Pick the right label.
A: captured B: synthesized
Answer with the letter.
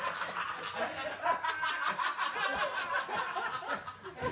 A